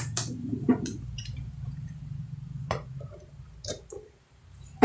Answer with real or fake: fake